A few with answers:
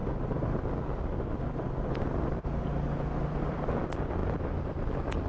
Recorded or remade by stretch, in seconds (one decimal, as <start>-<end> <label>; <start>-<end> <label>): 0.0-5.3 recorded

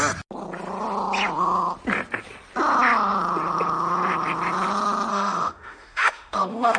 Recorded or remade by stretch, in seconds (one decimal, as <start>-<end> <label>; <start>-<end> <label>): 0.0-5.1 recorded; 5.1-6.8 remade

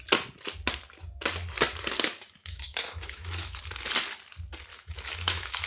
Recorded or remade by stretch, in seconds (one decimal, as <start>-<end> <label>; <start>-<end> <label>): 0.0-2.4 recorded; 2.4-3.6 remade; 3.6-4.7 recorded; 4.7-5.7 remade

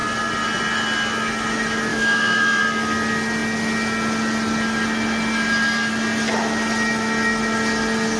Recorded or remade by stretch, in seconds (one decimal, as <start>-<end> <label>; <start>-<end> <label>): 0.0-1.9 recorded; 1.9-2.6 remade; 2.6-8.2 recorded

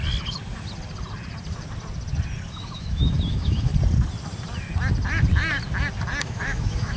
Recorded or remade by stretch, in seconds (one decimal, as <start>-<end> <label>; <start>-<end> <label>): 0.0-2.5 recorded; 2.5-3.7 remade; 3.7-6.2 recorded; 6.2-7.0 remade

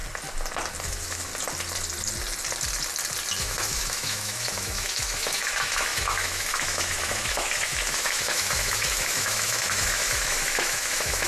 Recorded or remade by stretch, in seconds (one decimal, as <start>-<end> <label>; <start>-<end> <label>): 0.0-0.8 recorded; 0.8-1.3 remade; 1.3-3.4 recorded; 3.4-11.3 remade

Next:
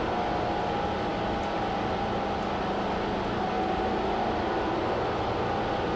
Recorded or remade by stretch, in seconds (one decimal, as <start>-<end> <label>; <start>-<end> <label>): 0.0-6.0 recorded

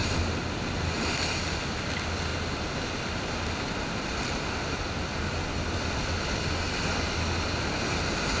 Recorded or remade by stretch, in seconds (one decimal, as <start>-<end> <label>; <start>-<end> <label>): 0.0-8.4 recorded